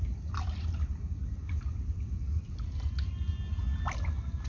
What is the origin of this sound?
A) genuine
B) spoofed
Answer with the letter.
A